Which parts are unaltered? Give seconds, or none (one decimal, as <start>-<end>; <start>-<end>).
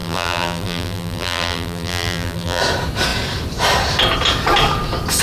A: 2.6-5.2